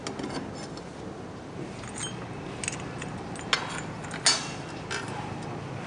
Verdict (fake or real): real